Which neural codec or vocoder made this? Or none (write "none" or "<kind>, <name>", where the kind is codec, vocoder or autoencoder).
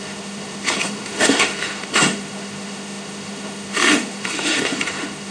autoencoder, DAC-VAE